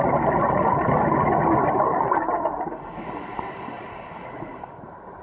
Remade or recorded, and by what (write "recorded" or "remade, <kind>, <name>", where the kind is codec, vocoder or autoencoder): recorded